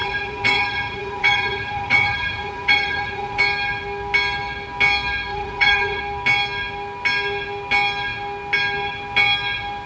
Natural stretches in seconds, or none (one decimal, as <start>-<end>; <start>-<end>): 3.4-5.3; 6.0-9.9